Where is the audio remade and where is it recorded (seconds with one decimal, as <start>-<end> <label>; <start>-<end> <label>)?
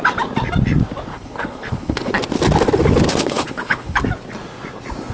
0.0-1.1 recorded; 1.1-2.1 remade; 2.1-3.1 recorded; 3.1-4.0 remade; 4.0-5.1 recorded